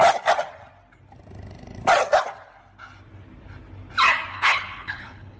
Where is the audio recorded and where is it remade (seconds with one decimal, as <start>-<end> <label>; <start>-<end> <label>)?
0.0-4.3 recorded; 4.3-5.4 remade